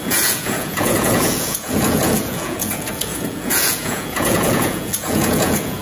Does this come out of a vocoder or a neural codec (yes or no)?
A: yes